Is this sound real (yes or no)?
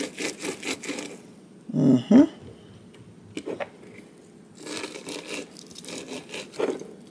yes